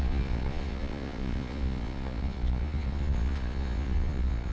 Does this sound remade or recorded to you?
remade